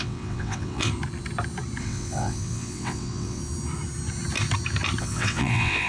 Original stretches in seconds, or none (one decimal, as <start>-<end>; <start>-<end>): 0.9-1.8; 3.4-5.0